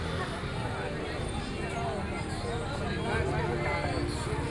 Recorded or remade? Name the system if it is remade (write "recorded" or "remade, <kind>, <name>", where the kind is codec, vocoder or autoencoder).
recorded